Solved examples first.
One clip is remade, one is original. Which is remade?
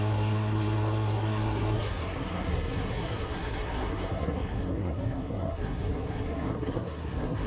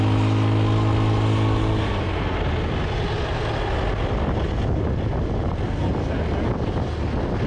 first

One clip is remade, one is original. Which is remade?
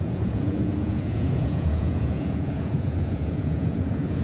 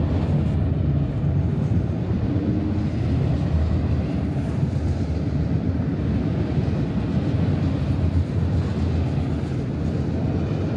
first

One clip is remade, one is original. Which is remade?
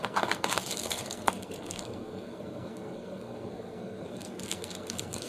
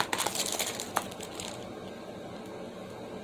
first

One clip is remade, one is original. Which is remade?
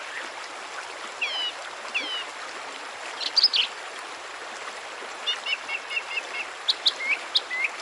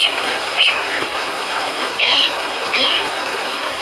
second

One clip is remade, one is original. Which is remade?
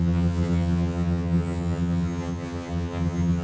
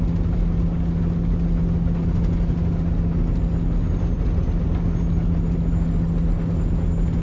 first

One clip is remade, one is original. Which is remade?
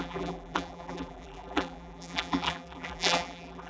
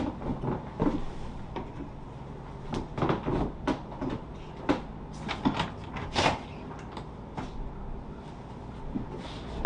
first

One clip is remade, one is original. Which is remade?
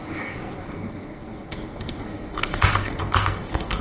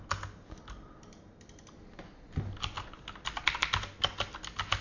first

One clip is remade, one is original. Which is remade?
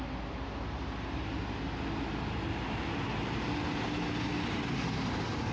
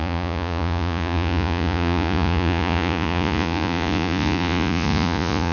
second